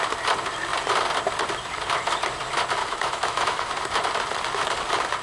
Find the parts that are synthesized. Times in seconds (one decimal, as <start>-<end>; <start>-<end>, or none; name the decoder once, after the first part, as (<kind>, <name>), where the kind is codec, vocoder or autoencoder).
2.8-3.7 (autoencoder, DAC-VAE)